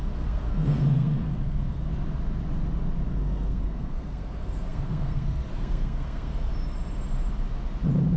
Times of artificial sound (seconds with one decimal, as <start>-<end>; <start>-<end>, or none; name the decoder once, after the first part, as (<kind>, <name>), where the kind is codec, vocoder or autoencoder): 0.0-1.9 (codec, SNAC); 3.1-6.5